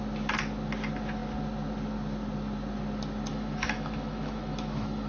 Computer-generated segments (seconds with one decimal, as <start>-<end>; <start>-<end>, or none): 3.3-5.1